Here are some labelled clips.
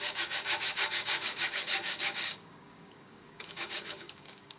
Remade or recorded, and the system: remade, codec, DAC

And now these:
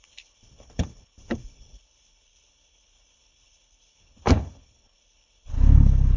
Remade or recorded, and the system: remade, codec, HILCodec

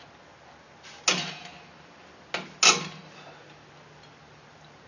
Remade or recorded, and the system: recorded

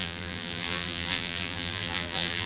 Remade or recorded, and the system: remade, vocoder, BigVGAN v2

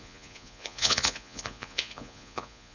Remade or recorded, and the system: remade, vocoder, Vocos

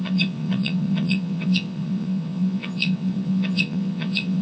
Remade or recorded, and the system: remade, vocoder, WaveNeXt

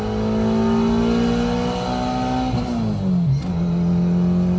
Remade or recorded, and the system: recorded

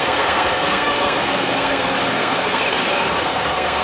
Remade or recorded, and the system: remade, codec, SNAC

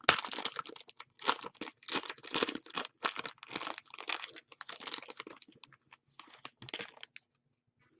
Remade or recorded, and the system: recorded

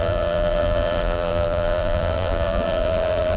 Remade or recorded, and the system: remade, vocoder, BigVGAN v2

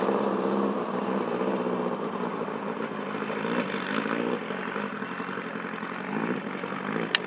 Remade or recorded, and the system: recorded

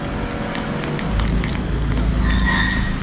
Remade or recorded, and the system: recorded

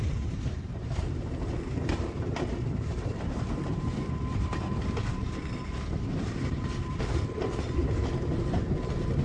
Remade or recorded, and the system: remade, vocoder, BigVGAN v2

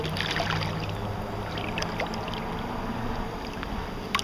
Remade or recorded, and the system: recorded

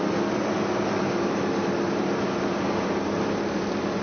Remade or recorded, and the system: recorded